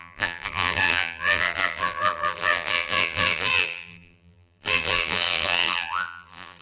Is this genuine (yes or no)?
no